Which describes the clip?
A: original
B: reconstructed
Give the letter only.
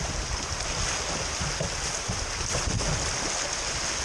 A